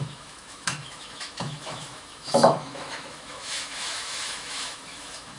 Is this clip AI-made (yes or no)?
yes